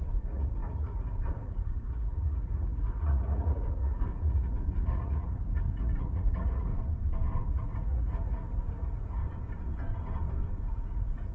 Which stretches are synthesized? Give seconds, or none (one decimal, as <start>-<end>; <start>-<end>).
0.0-6.7; 7.5-9.2; 10.6-11.3

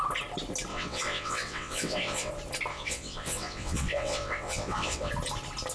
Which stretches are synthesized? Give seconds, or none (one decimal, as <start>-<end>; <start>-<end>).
0.7-2.3; 2.7-5.1

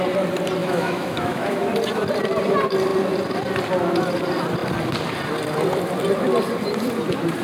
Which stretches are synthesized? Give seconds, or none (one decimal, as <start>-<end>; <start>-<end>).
0.6-1.7

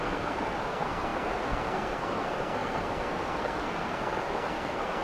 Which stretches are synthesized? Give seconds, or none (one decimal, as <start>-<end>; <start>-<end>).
0.0-5.0

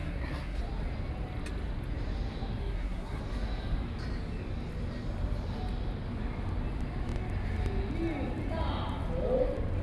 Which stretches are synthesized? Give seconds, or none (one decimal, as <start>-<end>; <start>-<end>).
0.0-0.6; 2.6-3.2